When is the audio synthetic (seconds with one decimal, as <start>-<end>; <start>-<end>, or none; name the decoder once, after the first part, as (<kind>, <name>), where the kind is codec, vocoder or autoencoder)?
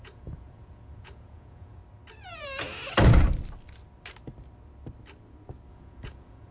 0.0-1.8 (vocoder, Vocos); 5.7-6.5